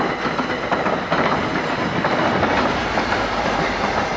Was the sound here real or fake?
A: real